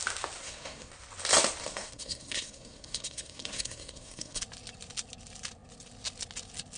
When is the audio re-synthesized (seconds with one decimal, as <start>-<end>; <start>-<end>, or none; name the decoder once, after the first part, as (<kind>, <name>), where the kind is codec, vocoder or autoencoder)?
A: 0.4-0.9 (codec, SNAC); 1.6-4.4